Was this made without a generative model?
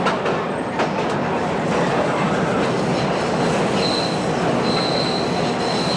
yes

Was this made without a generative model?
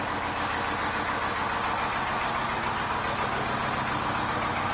yes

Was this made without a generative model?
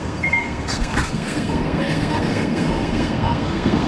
no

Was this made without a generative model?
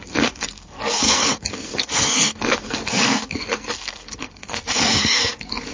no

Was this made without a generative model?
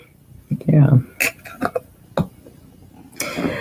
yes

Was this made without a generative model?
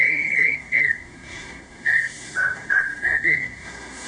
no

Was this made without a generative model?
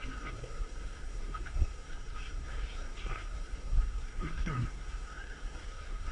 no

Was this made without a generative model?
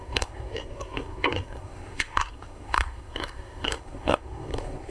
no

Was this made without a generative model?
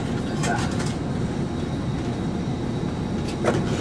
yes